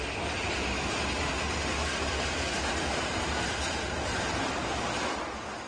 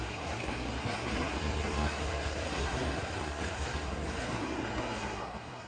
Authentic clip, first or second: first